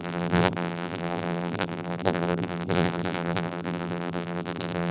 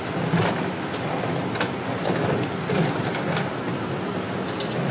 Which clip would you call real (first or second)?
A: second